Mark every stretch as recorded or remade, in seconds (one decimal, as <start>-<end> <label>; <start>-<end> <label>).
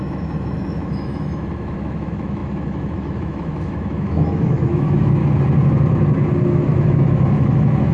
0.0-5.2 remade; 5.2-6.5 recorded; 6.5-7.9 remade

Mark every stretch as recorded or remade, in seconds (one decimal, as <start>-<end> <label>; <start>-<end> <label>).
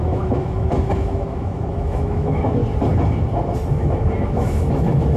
0.0-2.6 remade; 2.6-3.7 recorded; 3.7-5.2 remade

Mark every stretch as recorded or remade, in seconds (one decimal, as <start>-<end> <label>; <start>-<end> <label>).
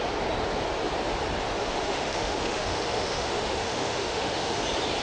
0.0-1.6 recorded; 1.6-4.6 remade; 4.6-5.0 recorded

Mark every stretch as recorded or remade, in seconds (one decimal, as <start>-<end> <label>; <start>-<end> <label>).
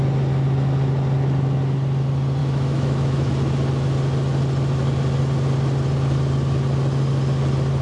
0.0-2.4 recorded; 2.4-3.3 remade; 3.3-7.8 recorded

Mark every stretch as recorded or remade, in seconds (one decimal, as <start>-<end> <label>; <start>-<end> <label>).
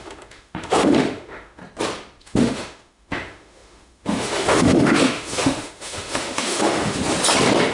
0.0-1.6 remade; 1.6-2.2 recorded; 2.2-7.0 remade; 7.0-7.7 recorded